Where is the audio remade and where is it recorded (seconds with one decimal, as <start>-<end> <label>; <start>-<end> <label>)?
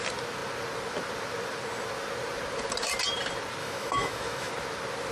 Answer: 0.0-3.6 recorded; 3.6-4.5 remade; 4.5-5.1 recorded